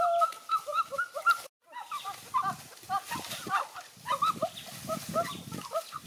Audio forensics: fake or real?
real